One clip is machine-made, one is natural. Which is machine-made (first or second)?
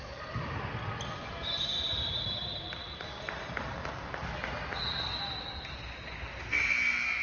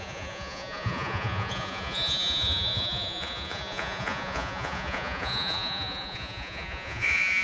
second